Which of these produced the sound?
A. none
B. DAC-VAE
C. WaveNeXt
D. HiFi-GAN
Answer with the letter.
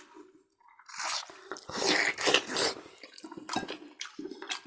A